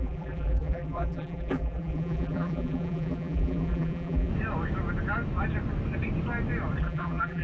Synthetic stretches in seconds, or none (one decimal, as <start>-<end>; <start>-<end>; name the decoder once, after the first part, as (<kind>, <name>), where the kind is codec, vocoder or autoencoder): 0.0-4.3 (vocoder, BigVGAN v2); 6.8-7.4